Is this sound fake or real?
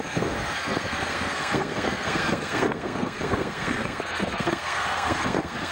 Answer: fake